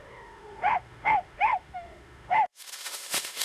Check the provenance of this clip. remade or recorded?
remade